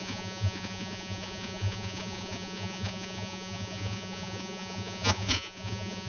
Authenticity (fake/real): fake